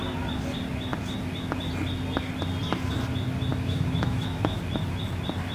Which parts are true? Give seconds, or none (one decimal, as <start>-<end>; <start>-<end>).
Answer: 0.0-3.5; 4.6-5.5